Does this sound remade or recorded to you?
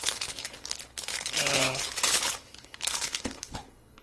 remade